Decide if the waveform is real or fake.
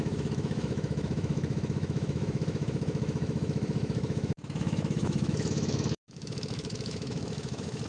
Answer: fake